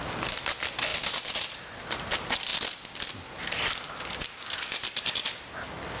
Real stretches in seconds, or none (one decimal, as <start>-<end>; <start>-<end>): 0.0-6.0